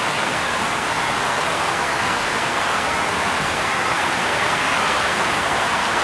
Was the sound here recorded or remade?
remade